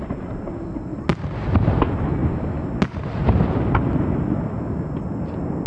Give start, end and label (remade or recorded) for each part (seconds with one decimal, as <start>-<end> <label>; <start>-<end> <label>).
0.0-5.7 recorded